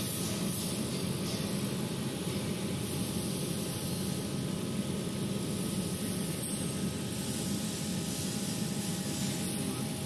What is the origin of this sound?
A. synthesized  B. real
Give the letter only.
B